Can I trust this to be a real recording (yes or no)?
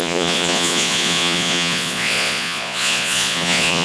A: no